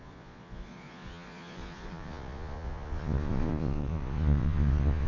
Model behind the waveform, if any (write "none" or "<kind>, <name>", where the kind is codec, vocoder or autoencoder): vocoder, Vocos